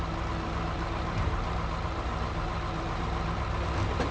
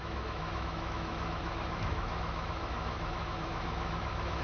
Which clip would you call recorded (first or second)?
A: first